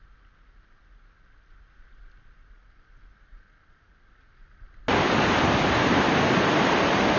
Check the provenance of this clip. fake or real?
real